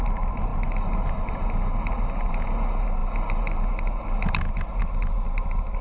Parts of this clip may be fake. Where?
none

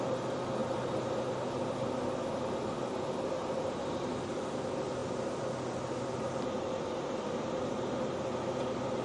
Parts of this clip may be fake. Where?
none

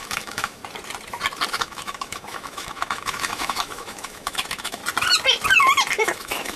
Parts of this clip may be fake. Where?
0.0-0.6 (autoencoder, DAC-VAE); 1.5-4.8; 6.0-6.6

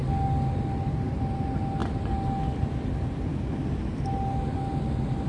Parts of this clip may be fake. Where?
none

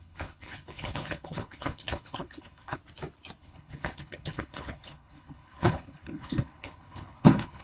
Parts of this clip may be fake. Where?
0.0-2.8 (codec, HILCodec); 3.4-7.6

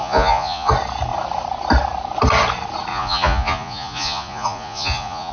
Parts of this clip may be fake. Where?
0.0-0.7 (vocoder, Vocos); 2.9-5.3

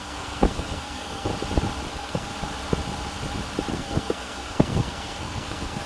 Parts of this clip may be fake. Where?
0.0-1.3 (codec, SNAC); 1.9-2.3; 3.7-5.9

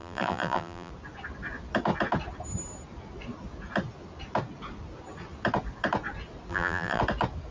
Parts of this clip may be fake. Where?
0.0-0.9 (vocoder, BigVGAN v2); 6.5-7.0